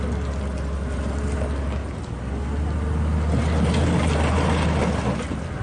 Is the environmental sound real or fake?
real